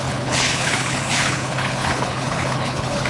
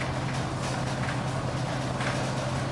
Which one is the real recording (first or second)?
second